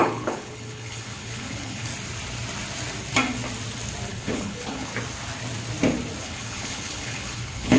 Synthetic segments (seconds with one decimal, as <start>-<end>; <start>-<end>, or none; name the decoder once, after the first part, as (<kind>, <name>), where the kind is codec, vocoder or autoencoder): 0.0-1.9 (codec, HILCodec); 4.1-4.9; 6.2-7.8

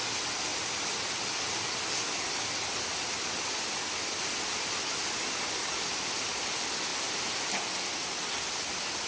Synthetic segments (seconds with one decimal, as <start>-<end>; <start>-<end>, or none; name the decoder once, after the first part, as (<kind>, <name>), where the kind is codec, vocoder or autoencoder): none

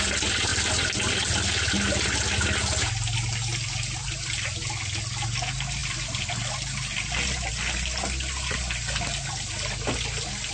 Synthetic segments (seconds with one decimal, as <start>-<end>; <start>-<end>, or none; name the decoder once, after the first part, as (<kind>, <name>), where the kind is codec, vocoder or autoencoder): none